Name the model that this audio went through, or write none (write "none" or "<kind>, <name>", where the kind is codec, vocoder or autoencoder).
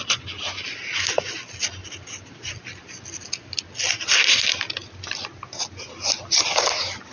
none